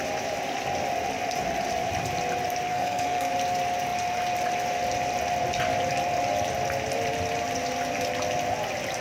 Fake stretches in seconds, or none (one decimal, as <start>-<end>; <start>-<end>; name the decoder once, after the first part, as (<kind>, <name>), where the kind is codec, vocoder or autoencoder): 2.7-3.3 (codec, SNAC)